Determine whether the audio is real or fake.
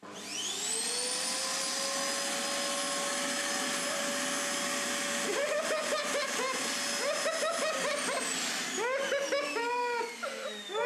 real